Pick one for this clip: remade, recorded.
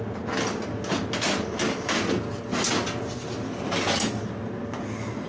recorded